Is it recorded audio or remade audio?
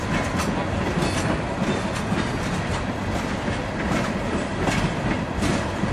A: recorded